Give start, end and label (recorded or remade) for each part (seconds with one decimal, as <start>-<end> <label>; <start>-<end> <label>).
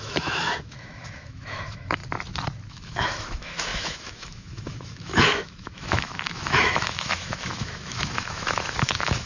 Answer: 0.0-2.0 remade; 2.0-2.7 recorded; 2.7-9.3 remade